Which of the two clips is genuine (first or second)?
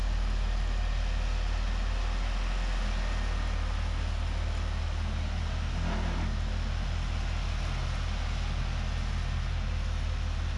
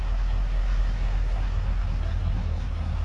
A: first